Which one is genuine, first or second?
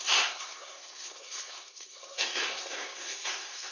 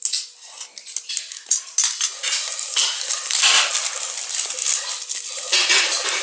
second